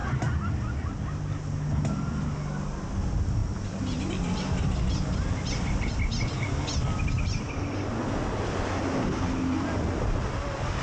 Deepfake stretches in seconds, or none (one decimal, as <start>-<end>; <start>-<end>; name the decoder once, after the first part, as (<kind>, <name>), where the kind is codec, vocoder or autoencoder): none